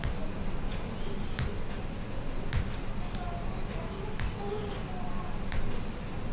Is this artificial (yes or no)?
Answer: no